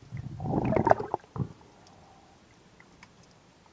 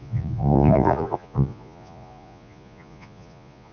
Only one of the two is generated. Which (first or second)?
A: second